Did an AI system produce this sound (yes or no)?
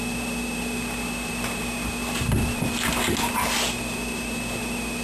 no